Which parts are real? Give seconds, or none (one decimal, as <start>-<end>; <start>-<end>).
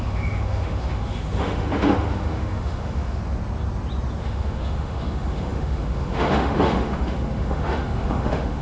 3.2-4.2